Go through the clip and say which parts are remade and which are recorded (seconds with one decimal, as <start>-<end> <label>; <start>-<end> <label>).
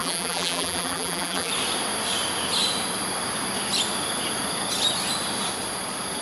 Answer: 0.0-1.5 remade; 1.5-6.2 recorded